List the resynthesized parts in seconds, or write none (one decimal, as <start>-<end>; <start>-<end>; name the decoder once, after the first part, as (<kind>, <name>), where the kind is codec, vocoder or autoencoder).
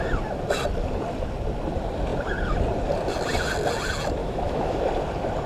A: 4.2-4.8 (autoencoder, DAC-VAE)